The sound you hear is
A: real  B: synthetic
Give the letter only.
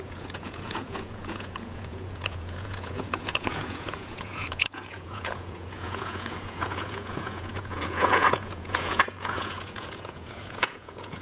B